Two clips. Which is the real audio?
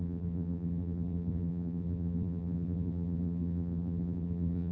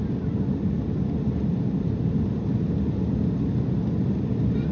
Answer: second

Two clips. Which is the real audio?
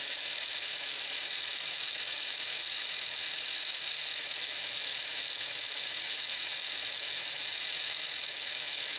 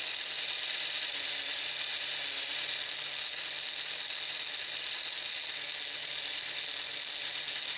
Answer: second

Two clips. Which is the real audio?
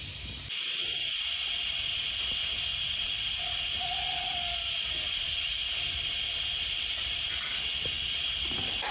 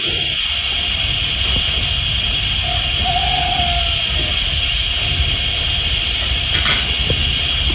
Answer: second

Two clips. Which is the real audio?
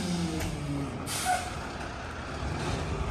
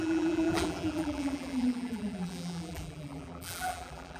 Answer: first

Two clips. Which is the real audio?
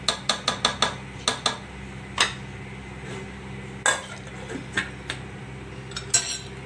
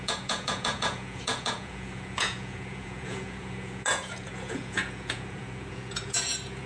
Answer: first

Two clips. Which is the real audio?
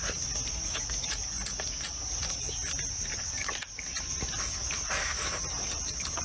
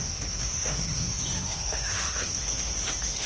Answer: first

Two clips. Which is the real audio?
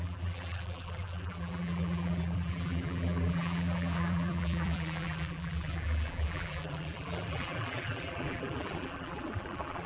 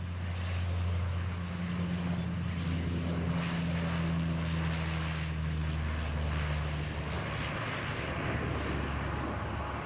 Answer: second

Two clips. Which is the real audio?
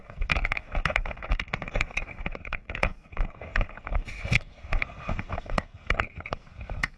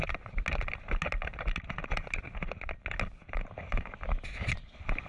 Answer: second